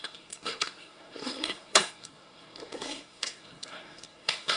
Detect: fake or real fake